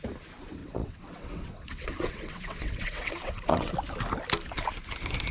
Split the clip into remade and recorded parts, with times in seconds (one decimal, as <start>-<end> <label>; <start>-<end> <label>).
0.0-0.6 recorded; 0.6-3.7 remade; 3.7-5.3 recorded